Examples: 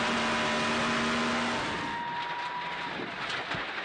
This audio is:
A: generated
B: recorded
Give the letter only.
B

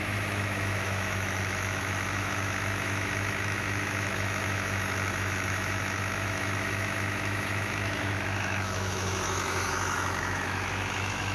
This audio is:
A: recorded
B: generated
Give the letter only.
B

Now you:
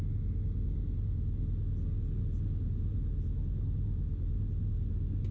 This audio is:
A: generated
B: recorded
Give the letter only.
B